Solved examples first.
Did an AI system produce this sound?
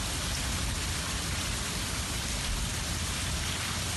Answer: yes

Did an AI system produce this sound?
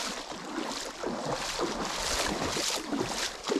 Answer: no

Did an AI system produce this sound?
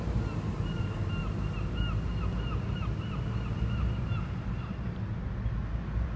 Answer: no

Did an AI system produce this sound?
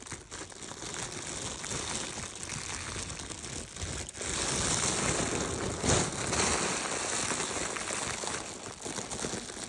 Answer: no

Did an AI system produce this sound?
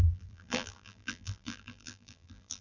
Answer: yes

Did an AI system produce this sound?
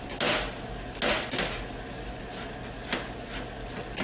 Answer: no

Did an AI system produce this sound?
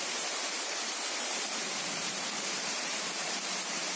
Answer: yes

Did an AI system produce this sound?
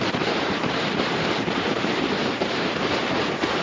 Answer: yes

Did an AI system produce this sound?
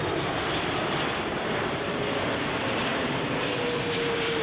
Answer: yes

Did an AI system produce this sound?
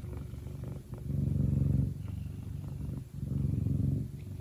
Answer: no